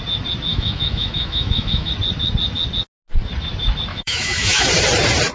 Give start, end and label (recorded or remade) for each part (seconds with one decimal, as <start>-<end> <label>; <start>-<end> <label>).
0.0-0.5 recorded; 0.5-1.9 remade; 1.9-3.9 recorded; 3.9-4.7 remade; 4.7-5.3 recorded